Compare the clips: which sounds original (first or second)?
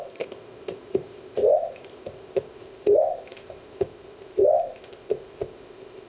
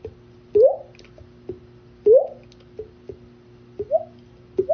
second